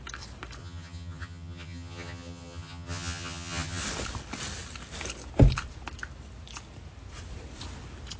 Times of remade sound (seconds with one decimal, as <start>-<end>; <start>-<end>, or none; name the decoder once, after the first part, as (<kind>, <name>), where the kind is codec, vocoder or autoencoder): 0.6-3.8 (vocoder, HiFi-GAN)